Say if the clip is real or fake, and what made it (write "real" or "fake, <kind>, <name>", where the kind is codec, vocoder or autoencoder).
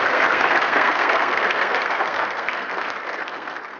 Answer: fake, codec, SNAC